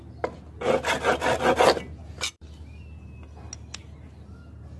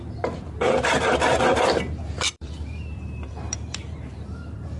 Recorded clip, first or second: first